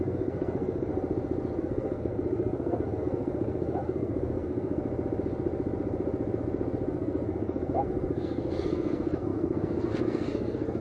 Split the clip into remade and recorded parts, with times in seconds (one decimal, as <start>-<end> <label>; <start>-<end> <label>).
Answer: 0.0-0.9 remade; 0.9-1.6 recorded; 1.6-4.8 remade; 4.8-6.9 recorded; 6.9-10.8 remade

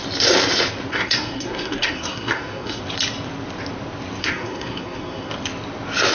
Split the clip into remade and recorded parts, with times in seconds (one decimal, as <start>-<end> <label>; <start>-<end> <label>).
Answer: 0.0-0.9 recorded; 0.9-2.8 remade; 2.8-4.2 recorded; 4.2-5.3 remade; 5.3-6.1 recorded

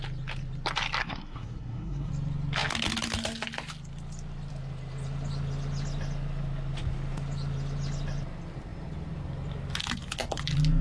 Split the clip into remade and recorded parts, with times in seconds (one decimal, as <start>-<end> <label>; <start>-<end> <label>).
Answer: 0.0-1.0 recorded; 1.0-2.1 remade; 2.1-10.8 recorded

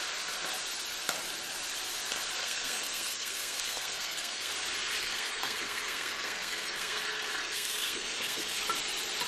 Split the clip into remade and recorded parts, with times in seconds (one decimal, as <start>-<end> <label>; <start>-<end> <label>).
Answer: 0.0-2.4 recorded; 2.4-4.5 remade; 4.5-5.0 recorded; 5.0-8.6 remade; 8.6-9.3 recorded

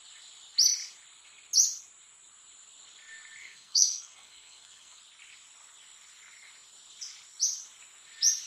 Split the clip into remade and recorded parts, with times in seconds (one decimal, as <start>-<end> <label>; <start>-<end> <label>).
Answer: 0.0-3.4 recorded; 3.4-5.0 remade; 5.0-8.5 recorded